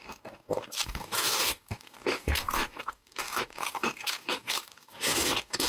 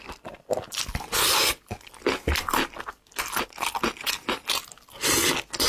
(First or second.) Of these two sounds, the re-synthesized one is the first